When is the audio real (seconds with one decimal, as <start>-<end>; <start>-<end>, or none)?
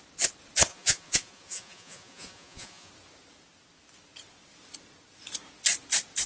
0.0-0.7; 2.9-6.3